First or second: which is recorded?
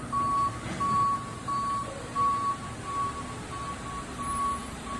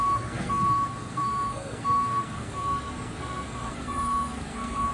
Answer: first